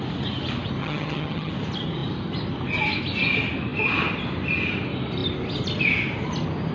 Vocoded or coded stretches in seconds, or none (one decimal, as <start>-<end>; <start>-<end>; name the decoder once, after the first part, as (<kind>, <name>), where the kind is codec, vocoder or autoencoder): 0.8-1.5 (vocoder, HiFi-GAN)